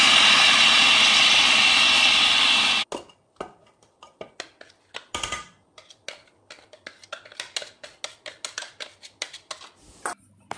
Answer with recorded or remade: recorded